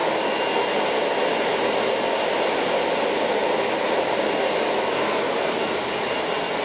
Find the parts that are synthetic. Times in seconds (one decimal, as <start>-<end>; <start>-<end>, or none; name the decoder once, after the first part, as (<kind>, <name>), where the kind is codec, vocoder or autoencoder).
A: none